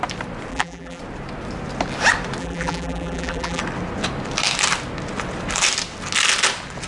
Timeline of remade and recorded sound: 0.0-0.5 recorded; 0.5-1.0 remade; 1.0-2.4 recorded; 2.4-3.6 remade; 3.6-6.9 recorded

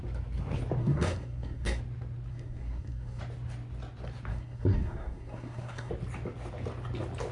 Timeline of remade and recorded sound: 0.0-0.8 recorded; 0.8-1.8 remade; 1.8-2.3 recorded; 2.3-3.2 remade; 3.2-4.3 recorded; 4.3-5.9 remade; 5.9-7.3 recorded

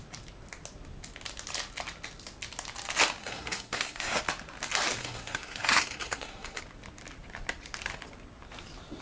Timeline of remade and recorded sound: 0.0-3.2 recorded; 3.2-4.2 remade; 4.2-5.0 recorded; 5.0-6.6 remade; 6.6-9.0 recorded

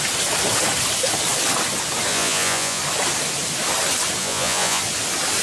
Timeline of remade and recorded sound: 0.0-2.1 recorded; 2.1-2.8 remade; 2.8-4.2 recorded; 4.2-4.8 remade; 4.8-5.4 recorded

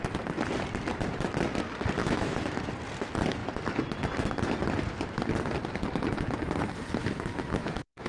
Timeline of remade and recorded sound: 0.0-2.0 recorded; 2.0-2.7 remade; 2.7-7.0 recorded; 7.0-8.1 remade

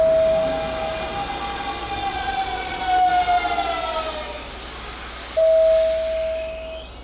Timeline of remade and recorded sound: 0.0-2.1 recorded; 2.1-2.8 remade; 2.8-7.0 recorded